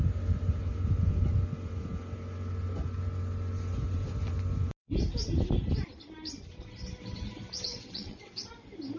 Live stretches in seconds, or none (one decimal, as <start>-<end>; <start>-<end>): 0.0-7.7; 8.5-9.0